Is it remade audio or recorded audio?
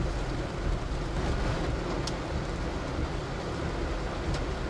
recorded